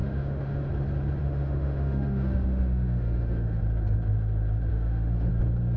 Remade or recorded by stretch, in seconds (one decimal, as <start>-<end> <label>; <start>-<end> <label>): 0.0-0.7 remade; 0.7-1.2 recorded; 1.2-3.6 remade; 3.6-4.7 recorded; 4.7-5.3 remade; 5.3-5.8 recorded